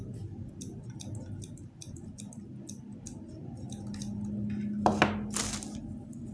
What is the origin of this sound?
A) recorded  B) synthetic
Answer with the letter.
A